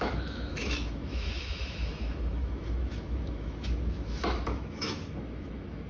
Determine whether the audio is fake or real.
fake